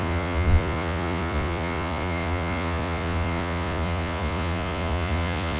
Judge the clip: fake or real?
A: fake